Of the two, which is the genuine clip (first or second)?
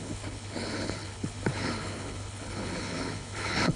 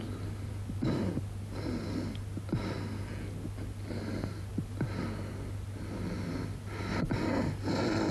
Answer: second